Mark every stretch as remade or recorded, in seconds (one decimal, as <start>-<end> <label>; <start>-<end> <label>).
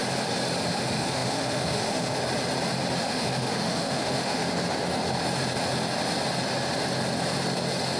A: 0.0-0.7 recorded; 0.7-2.2 remade; 2.2-3.0 recorded; 3.0-4.4 remade; 4.4-8.0 recorded